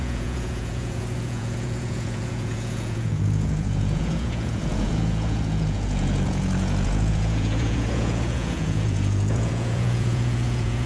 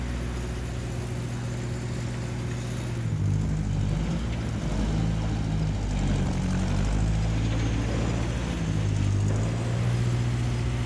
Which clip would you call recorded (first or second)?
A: second